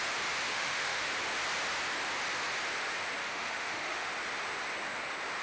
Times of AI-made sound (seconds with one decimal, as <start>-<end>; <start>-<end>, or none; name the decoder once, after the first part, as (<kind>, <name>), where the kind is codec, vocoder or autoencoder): 0.5-1.1 (autoencoder, DAC-VAE); 3.2-4.1